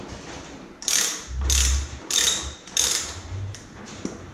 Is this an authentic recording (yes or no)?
no